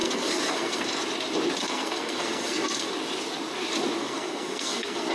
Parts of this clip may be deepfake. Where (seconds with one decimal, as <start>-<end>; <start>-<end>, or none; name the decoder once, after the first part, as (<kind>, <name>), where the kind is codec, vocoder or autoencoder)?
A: 0.0-1.0 (codec, SNAC); 1.6-2.9; 4.0-5.1